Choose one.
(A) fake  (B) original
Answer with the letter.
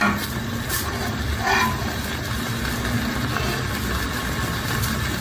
B